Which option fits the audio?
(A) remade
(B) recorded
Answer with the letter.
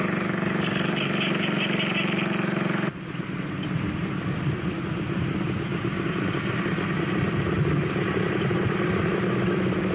B